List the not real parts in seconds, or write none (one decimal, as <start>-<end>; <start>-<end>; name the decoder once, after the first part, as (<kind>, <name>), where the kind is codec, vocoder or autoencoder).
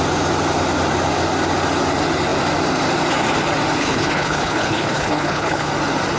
3.8-5.7 (codec, HILCodec)